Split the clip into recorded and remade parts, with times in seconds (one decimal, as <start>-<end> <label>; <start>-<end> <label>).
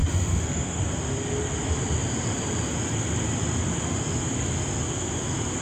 0.0-0.8 remade; 0.8-5.6 recorded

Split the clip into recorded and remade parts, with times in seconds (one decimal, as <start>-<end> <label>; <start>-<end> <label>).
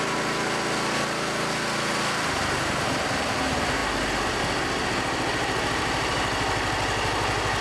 0.0-7.6 recorded